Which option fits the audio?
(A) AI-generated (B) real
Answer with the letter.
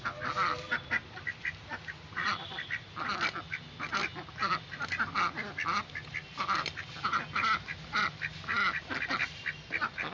B